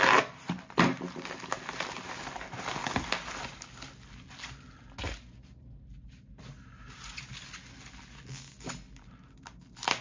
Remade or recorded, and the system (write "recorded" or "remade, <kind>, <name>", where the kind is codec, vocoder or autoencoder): recorded